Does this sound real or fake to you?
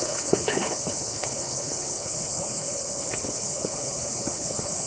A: fake